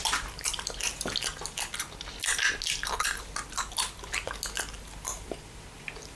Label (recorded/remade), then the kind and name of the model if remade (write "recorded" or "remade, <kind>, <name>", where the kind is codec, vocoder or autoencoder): recorded